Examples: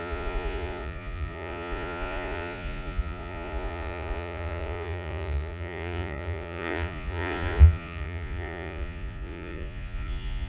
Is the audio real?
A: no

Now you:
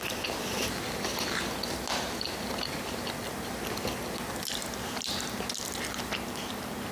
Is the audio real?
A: yes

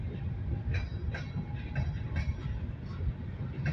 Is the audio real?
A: yes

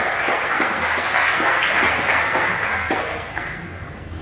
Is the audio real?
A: no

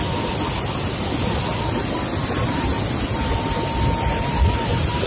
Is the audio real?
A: yes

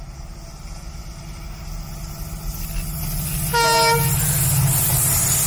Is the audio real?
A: yes